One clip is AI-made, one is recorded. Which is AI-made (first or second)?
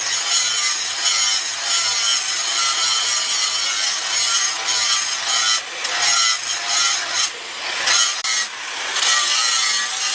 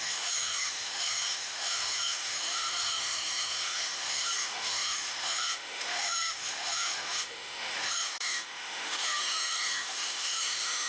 second